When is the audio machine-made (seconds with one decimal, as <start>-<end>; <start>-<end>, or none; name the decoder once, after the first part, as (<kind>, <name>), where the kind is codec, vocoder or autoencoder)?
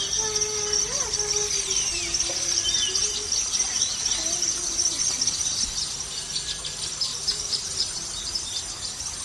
7.1-8.2 (vocoder, BigVGAN v2)